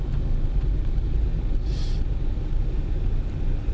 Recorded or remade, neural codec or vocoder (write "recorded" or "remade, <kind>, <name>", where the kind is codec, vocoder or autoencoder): recorded